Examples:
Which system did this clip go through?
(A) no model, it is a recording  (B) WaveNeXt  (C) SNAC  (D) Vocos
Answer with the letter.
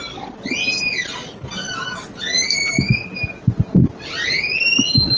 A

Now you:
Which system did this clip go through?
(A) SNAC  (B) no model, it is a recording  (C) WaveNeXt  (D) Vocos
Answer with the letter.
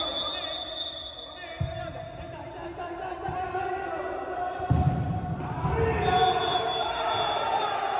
B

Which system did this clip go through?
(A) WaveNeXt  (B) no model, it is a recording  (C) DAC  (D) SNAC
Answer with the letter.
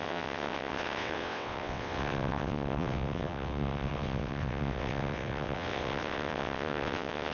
A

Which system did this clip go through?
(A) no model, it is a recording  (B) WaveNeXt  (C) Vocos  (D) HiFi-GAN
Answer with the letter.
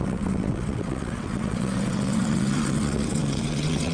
B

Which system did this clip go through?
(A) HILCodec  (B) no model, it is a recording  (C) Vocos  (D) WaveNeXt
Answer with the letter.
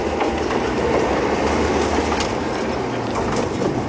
B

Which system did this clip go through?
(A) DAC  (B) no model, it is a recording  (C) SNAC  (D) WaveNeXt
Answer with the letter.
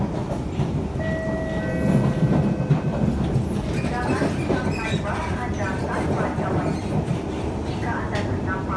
B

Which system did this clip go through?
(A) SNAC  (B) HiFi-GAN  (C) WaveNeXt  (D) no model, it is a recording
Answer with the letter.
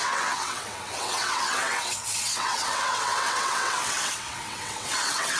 C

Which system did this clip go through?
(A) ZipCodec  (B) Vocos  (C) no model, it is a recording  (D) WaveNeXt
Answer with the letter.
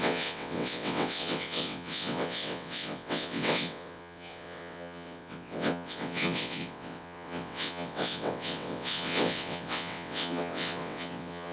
D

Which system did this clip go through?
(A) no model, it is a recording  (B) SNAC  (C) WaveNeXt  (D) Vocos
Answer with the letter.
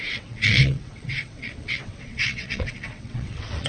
C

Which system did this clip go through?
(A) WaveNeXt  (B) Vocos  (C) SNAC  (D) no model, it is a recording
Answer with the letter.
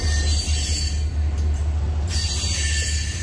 D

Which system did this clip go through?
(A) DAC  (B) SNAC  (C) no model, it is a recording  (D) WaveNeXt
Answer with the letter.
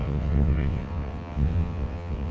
D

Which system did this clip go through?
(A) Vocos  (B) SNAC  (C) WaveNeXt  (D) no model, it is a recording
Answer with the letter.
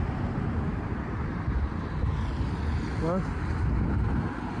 D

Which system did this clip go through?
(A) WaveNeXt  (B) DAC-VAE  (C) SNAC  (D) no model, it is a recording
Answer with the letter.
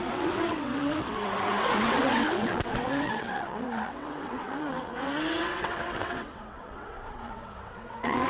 A